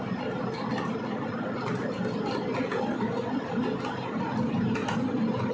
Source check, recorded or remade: recorded